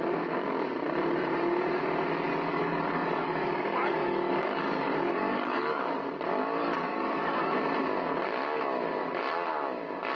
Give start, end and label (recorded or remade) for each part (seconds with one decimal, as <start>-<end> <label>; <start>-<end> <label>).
0.0-2.3 recorded; 2.3-5.8 remade; 5.8-6.6 recorded; 6.6-7.5 remade; 7.5-10.1 recorded